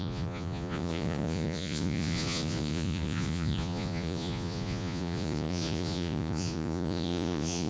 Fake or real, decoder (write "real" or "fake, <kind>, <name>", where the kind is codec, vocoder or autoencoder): fake, vocoder, Vocos